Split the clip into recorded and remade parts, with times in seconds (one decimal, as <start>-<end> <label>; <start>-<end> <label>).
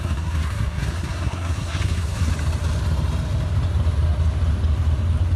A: 0.0-2.3 remade; 2.3-5.4 recorded